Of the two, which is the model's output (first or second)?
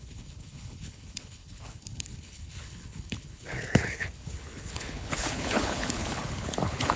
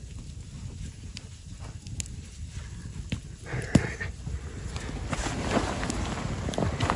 first